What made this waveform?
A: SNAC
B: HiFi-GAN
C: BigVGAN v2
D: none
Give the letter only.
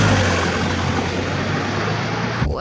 D